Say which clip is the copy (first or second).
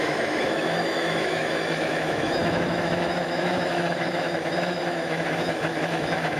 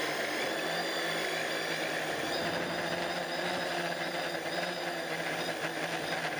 first